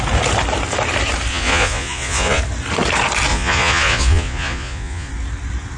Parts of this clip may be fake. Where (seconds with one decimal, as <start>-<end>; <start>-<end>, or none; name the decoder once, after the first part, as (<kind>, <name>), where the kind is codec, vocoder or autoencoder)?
1.3-2.4 (vocoder, Vocos); 3.3-5.1